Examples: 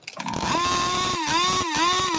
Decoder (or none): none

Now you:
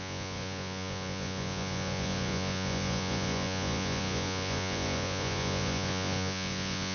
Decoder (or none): vocoder, Vocos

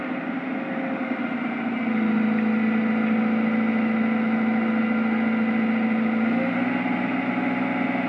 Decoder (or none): none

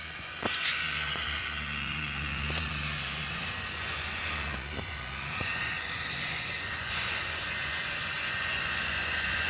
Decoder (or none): vocoder, Vocos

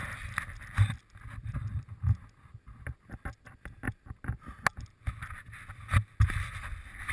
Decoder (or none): none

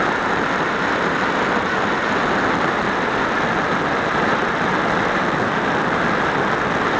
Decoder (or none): none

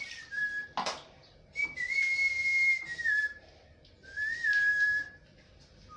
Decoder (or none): none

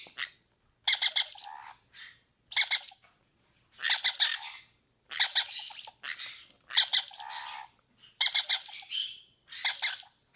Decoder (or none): none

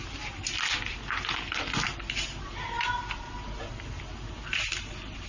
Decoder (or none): none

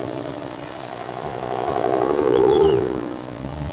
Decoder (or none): vocoder, Vocos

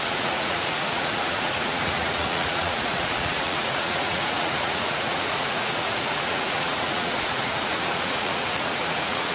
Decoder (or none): vocoder, Vocos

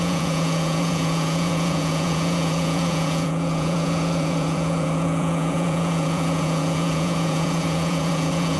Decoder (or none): vocoder, Vocos